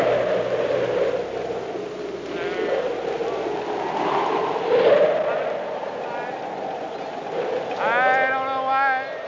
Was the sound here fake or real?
real